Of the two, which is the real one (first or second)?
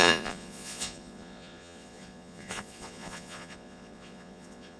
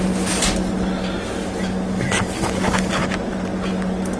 second